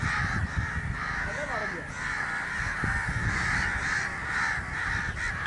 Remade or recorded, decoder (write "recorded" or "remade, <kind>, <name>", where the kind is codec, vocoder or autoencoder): recorded